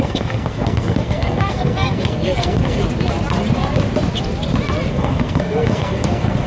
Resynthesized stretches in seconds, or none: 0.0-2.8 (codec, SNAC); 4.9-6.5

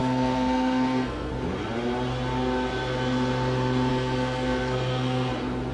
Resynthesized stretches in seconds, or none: 0.0-1.3 (codec, SNAC); 3.9-5.3